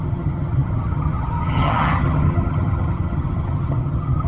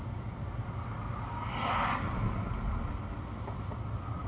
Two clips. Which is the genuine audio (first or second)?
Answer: second